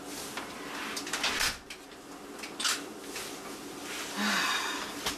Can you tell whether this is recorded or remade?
recorded